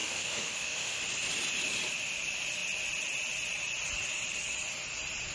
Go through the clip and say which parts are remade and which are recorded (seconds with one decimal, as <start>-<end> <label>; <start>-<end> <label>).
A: 0.0-1.0 remade; 1.0-5.3 recorded